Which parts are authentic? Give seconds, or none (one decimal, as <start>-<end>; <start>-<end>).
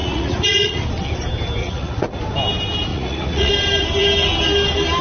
0.8-1.6; 2.2-2.9; 3.5-5.0